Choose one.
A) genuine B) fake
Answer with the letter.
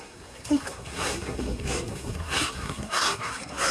B